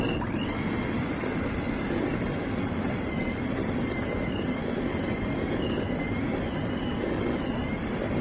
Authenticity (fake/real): real